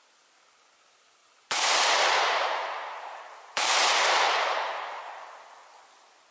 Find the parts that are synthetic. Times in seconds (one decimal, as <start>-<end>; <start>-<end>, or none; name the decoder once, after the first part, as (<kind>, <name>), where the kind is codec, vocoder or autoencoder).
1.2-5.0 (vocoder, BigVGAN v2)